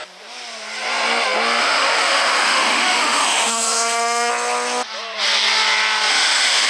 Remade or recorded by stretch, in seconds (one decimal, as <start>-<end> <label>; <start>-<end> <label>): 0.0-1.6 recorded; 1.6-4.3 remade; 4.3-6.1 recorded; 6.1-6.7 remade